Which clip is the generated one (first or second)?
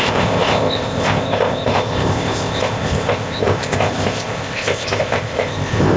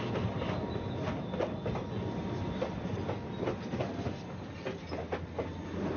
first